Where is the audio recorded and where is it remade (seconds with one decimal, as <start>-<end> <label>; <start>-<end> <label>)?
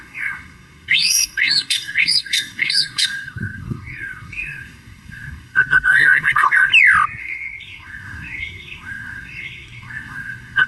0.0-6.7 remade; 6.7-7.2 recorded; 7.2-10.7 remade